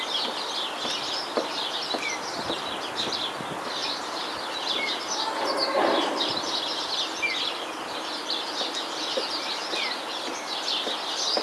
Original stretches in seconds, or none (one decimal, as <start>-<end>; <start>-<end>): 0.0-3.8; 6.9-11.4